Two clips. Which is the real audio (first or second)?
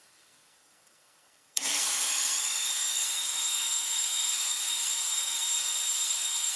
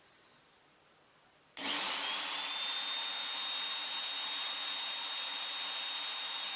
second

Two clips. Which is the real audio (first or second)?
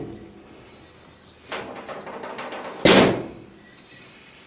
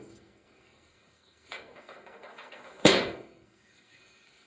first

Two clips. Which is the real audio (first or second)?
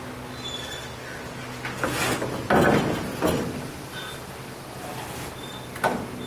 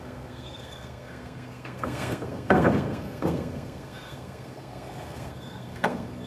first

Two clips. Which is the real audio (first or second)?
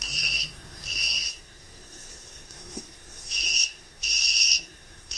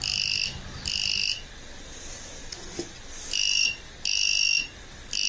second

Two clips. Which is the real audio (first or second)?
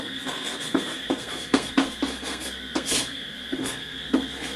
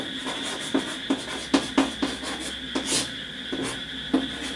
second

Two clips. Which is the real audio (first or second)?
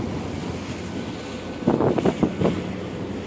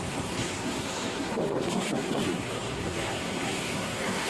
first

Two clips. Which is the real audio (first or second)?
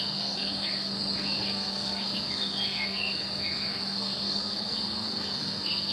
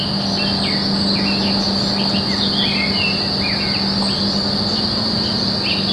second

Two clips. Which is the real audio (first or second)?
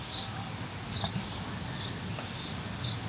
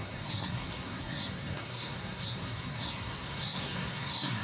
first